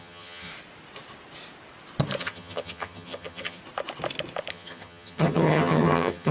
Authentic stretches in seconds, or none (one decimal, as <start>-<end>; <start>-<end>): 0.5-2.2; 3.6-4.5